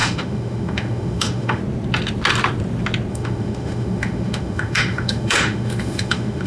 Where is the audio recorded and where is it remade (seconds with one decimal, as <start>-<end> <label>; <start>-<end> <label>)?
0.0-1.6 remade; 1.6-3.1 recorded; 3.1-6.5 remade